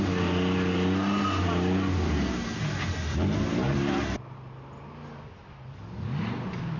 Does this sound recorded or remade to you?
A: recorded